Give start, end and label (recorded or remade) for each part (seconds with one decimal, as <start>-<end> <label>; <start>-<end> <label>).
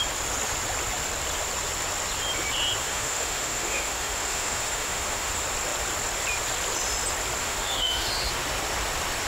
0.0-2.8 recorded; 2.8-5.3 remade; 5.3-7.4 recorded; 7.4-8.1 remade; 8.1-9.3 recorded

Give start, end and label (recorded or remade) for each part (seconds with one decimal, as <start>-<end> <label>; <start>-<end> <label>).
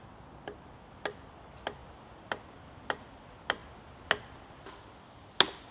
0.0-5.7 recorded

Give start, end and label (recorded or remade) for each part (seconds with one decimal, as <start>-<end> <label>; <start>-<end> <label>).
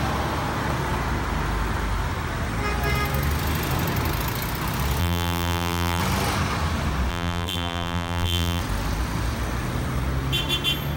0.0-5.0 recorded; 5.0-6.0 remade; 6.0-7.1 recorded; 7.1-8.6 remade; 8.6-11.0 recorded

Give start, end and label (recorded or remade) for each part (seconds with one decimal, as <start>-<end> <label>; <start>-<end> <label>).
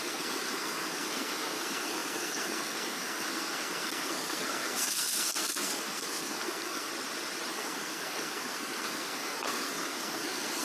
0.0-6.9 remade; 6.9-7.5 recorded; 7.5-10.6 remade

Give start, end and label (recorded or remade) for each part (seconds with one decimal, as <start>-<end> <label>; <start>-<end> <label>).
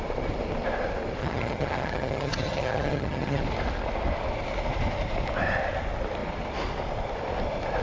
0.0-1.2 recorded; 1.2-3.4 remade; 3.4-7.8 recorded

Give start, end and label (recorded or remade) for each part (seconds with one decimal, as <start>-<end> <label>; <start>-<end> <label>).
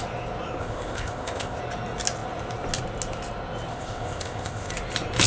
0.0-0.6 recorded; 0.6-1.6 remade; 1.6-3.7 recorded; 3.7-4.7 remade; 4.7-5.3 recorded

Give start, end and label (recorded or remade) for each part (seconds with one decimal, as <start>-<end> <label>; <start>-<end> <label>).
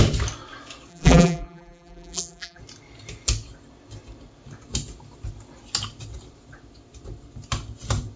0.0-0.9 recorded; 0.9-2.6 remade; 2.6-8.2 recorded